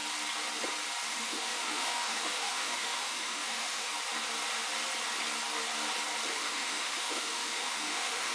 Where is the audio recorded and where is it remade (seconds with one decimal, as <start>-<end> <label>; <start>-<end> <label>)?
0.0-1.1 recorded; 1.1-3.9 remade; 3.9-6.3 recorded; 6.3-8.3 remade